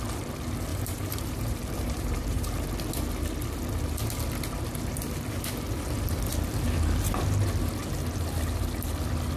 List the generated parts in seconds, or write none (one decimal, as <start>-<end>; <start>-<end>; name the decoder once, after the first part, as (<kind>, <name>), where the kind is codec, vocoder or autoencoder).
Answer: 0.7-2.7 (vocoder, BigVGAN v2)